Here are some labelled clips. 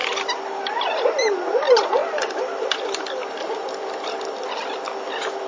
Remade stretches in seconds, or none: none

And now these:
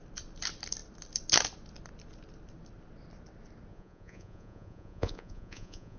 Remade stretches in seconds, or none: 3.7-6.0